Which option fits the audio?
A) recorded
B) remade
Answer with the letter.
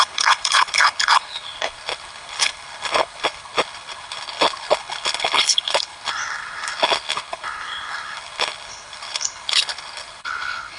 B